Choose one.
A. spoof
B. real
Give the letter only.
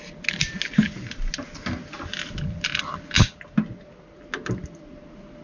B